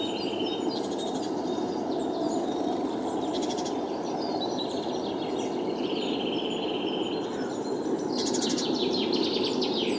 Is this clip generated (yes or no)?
no